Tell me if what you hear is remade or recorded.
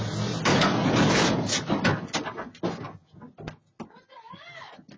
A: recorded